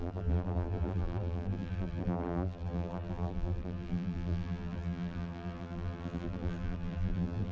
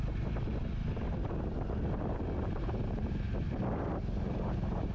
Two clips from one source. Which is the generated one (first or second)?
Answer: first